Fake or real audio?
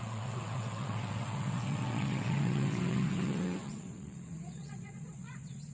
fake